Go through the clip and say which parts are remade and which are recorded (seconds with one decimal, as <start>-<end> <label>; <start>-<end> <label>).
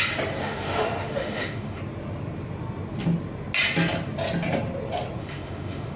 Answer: 0.0-0.4 recorded; 0.4-1.8 remade; 1.8-5.2 recorded; 5.2-6.0 remade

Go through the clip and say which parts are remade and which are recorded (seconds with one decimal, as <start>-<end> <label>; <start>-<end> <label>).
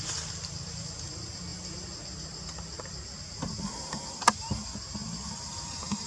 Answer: 0.0-6.1 recorded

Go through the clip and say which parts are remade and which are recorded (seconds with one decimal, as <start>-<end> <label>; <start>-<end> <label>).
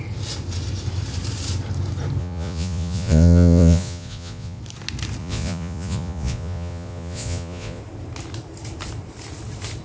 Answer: 0.0-2.2 recorded; 2.2-4.6 remade; 4.6-5.2 recorded; 5.2-7.8 remade; 7.8-9.8 recorded